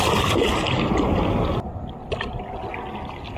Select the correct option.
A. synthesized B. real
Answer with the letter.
B